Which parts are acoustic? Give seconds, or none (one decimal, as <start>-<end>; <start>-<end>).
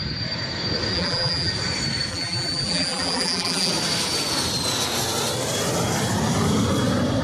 0.0-0.9; 1.5-2.1; 3.7-7.2